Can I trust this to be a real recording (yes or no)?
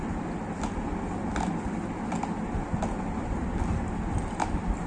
yes